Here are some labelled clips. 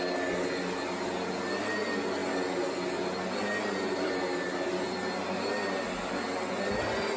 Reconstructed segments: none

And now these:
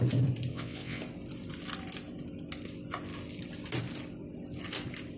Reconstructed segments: 0.5-1.0 (vocoder, WaveNeXt)